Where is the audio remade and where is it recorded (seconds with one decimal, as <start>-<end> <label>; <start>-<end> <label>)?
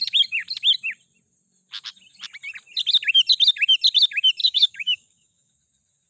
0.0-4.4 recorded; 4.4-5.5 remade; 5.5-6.1 recorded